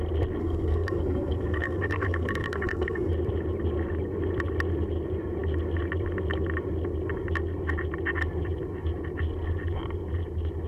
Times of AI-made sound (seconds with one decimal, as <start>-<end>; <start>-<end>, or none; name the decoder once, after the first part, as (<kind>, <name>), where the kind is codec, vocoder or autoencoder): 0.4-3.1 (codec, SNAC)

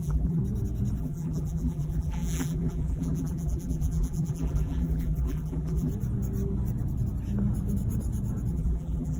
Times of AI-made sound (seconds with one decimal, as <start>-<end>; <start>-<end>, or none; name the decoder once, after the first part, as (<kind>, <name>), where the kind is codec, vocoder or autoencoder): 0.0-0.4 (vocoder, BigVGAN v2); 1.0-5.9; 8.5-9.2

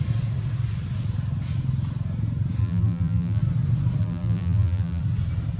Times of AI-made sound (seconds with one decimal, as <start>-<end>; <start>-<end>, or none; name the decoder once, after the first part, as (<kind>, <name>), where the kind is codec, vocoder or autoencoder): 2.6-3.4 (vocoder, BigVGAN v2); 4.0-5.0